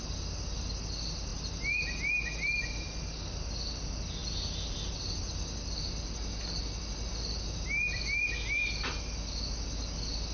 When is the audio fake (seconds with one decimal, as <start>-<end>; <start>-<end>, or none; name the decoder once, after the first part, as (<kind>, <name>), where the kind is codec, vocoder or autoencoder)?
4.2-5.1 (vocoder, BigVGAN v2); 5.8-6.8